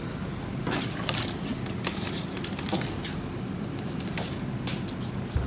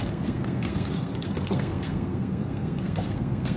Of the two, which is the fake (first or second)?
second